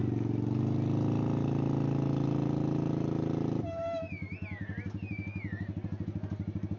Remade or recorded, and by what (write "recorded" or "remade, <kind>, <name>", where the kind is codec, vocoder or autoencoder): recorded